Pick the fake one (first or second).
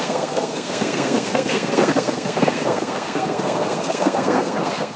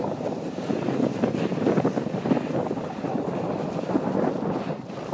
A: first